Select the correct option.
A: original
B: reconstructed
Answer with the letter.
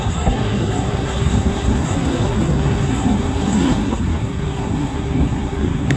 B